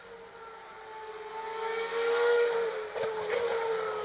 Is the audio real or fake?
real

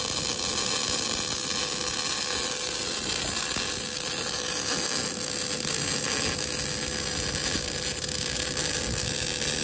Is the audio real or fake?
real